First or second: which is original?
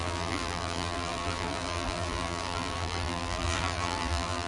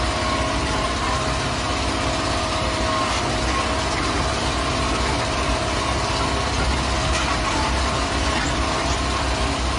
second